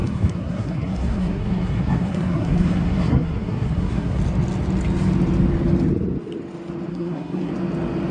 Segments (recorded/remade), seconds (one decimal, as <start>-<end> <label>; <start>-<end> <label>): 0.0-4.2 remade; 4.2-6.9 recorded; 6.9-7.5 remade; 7.5-8.1 recorded